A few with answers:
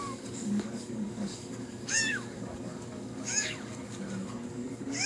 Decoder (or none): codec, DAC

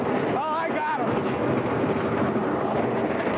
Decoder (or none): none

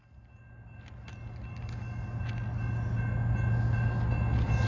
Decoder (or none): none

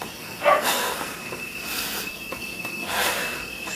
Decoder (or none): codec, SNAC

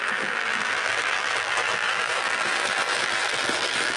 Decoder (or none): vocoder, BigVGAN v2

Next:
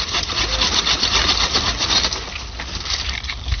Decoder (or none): none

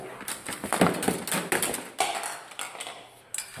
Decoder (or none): none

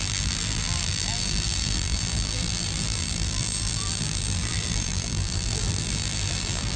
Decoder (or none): vocoder, BigVGAN v2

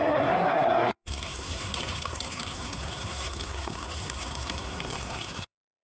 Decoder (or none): codec, SNAC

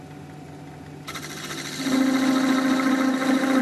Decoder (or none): none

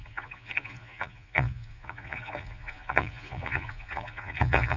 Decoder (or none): vocoder, Vocos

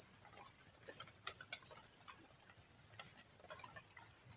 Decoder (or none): none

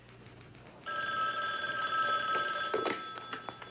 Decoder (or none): none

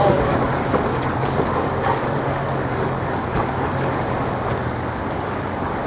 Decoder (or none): codec, DAC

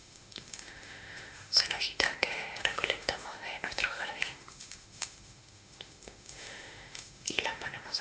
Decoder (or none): autoencoder, DAC-VAE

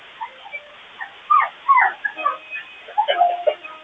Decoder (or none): none